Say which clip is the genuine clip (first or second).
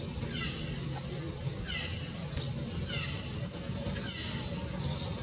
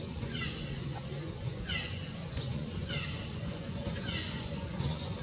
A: first